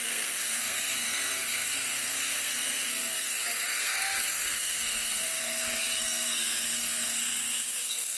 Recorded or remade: remade